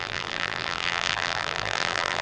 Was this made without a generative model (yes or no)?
no